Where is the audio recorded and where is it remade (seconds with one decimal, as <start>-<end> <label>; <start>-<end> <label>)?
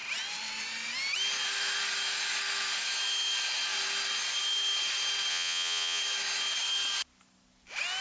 0.0-5.3 recorded; 5.3-6.0 remade; 6.0-8.0 recorded